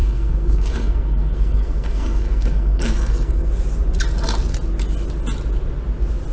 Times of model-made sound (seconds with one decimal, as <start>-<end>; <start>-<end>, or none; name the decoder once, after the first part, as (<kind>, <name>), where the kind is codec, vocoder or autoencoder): 0.0-3.5 (codec, SNAC)